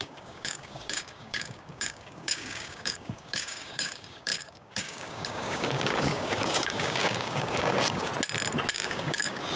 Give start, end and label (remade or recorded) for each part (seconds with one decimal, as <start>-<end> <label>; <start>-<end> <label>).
0.0-8.1 remade; 8.1-8.7 recorded; 8.7-9.6 remade